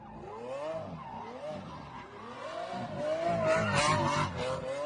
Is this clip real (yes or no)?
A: yes